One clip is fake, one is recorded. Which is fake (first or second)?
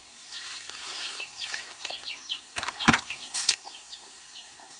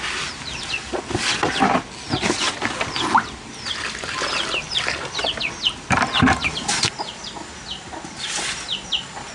first